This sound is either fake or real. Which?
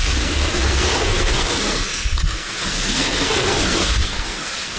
fake